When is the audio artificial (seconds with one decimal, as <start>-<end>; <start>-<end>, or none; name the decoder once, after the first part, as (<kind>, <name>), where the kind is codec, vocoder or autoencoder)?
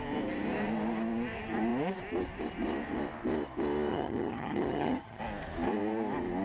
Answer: 3.9-5.2 (vocoder, HiFi-GAN)